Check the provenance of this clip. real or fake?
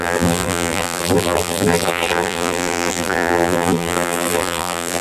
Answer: fake